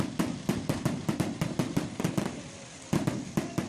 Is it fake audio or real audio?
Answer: fake